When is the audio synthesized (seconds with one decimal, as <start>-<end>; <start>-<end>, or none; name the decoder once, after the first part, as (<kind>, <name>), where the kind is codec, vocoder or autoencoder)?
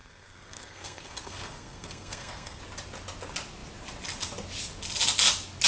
0.0-2.6 (codec, SNAC)